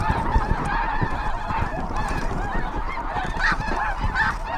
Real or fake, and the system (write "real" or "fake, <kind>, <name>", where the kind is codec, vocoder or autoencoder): fake, vocoder, BigVGAN v2